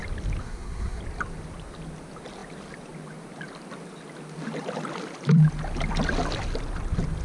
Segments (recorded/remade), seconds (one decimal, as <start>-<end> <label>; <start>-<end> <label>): 0.0-0.4 recorded; 0.4-1.0 remade; 1.0-7.2 recorded